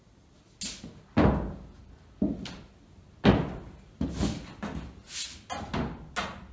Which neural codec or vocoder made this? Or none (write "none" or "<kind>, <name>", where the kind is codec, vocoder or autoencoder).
none